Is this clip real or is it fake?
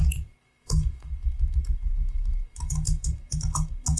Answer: fake